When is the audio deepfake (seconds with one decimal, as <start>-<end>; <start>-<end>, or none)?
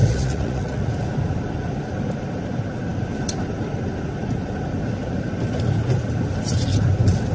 0.0-0.9